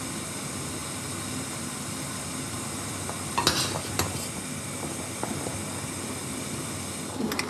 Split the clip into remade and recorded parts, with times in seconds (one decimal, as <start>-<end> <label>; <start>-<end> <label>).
0.0-7.5 recorded